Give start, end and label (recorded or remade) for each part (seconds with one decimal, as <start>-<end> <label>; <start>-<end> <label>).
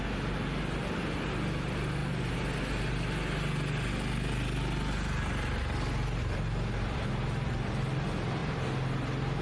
0.0-9.4 recorded